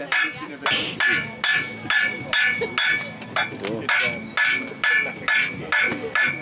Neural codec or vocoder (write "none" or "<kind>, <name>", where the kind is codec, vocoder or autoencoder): none